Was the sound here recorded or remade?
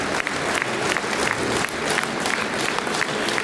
recorded